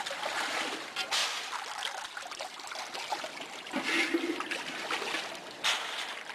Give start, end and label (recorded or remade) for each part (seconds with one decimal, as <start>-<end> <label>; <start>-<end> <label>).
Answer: 0.0-6.3 recorded